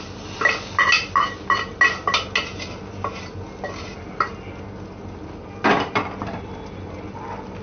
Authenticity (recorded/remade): recorded